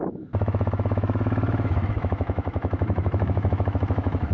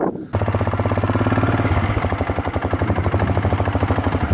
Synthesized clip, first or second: first